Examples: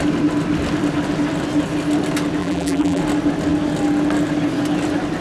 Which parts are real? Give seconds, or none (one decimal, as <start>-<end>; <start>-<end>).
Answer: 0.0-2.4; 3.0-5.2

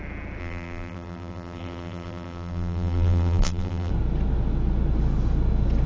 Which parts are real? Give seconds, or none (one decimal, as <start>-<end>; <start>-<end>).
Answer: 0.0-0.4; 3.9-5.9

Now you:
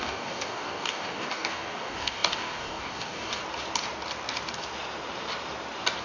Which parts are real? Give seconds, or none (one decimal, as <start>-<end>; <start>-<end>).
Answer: 3.4-6.0

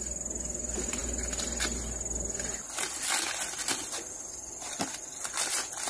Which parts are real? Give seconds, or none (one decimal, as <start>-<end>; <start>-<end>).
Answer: 0.0-5.9

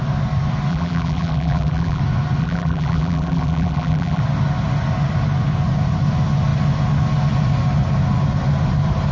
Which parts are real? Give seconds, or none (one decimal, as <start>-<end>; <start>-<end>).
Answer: 0.0-0.7; 2.0-2.4; 4.2-9.1

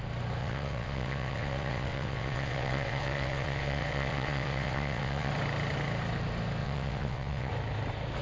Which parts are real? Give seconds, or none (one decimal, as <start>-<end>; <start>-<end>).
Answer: 0.0-0.4; 5.3-6.6; 7.5-8.2